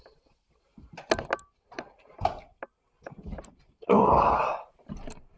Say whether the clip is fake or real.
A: real